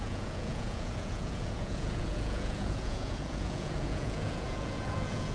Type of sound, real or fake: fake